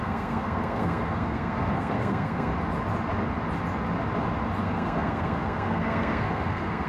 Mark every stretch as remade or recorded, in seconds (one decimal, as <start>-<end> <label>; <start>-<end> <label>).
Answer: 0.0-2.5 remade; 2.5-4.6 recorded; 4.6-6.9 remade